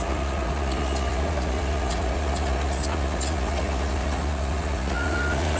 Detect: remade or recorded remade